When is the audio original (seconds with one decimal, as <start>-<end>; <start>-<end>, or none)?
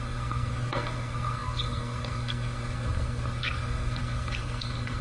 none